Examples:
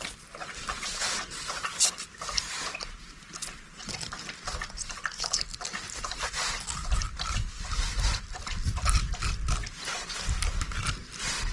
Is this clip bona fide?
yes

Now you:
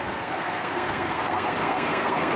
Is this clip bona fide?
no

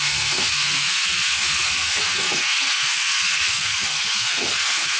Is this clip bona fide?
no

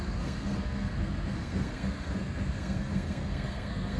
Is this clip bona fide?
no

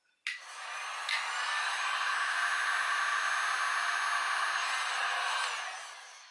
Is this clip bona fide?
yes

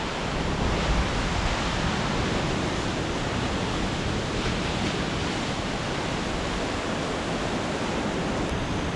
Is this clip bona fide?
yes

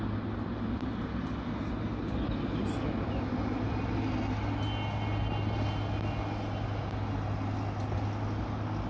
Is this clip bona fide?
yes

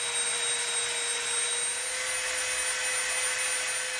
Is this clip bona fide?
yes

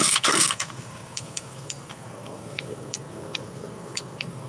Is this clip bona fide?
no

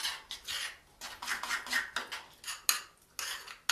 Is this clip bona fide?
yes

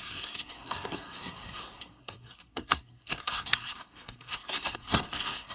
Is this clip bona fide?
no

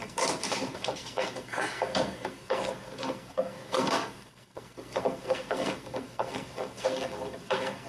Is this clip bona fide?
no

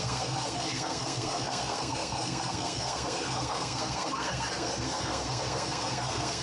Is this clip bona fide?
no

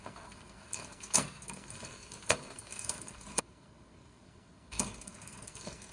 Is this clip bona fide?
no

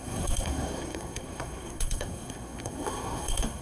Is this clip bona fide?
no